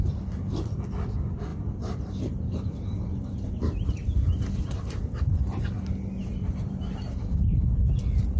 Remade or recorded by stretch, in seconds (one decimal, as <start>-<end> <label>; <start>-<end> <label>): 0.0-1.5 recorded; 1.5-5.0 remade; 5.0-6.2 recorded; 6.2-7.6 remade; 7.6-8.4 recorded